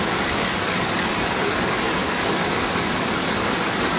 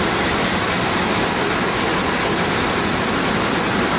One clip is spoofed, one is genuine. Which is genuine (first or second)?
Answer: second